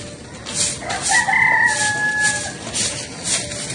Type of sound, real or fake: real